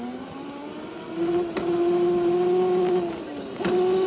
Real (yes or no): yes